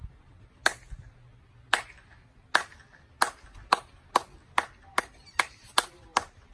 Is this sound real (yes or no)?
yes